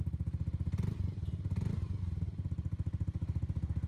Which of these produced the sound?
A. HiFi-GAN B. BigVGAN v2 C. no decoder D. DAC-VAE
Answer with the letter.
C